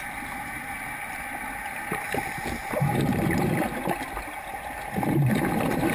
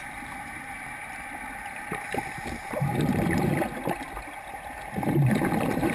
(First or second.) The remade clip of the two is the second